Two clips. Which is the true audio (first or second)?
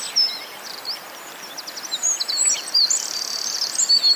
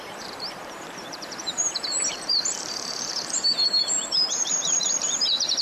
first